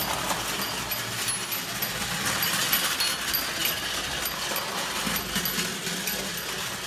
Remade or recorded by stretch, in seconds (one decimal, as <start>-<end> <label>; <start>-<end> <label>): 0.0-6.9 recorded